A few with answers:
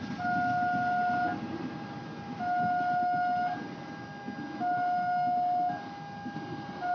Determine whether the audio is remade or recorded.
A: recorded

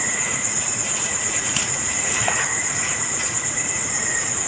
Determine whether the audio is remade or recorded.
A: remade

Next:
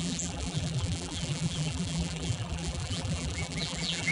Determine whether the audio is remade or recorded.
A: remade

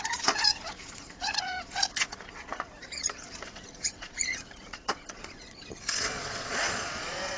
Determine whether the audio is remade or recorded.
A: remade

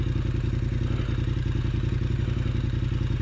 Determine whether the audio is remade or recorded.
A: recorded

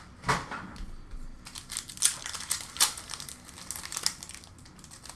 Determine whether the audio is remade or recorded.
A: recorded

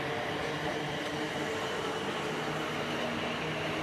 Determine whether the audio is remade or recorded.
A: recorded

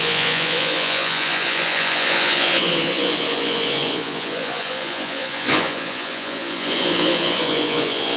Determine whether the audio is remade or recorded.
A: remade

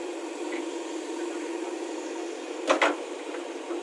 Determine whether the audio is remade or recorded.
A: recorded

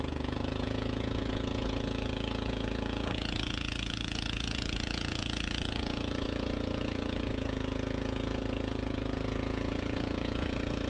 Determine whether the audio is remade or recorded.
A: remade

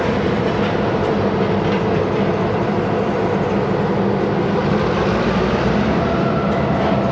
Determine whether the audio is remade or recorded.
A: recorded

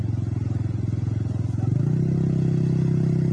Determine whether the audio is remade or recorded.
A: recorded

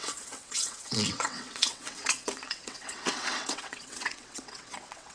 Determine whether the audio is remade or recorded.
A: remade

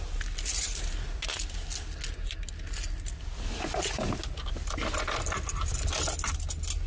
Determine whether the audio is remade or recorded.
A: recorded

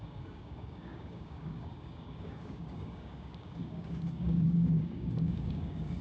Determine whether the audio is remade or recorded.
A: remade